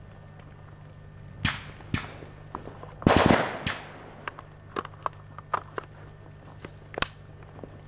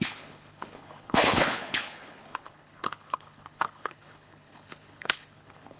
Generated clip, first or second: second